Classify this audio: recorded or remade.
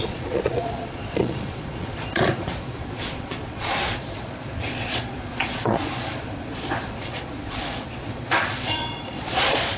remade